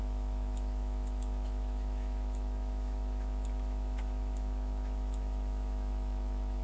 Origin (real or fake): fake